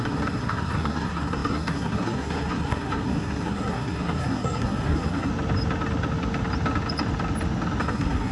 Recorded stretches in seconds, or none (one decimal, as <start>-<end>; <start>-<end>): 5.3-7.8